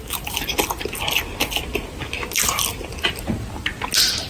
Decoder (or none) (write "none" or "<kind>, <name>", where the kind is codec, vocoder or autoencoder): none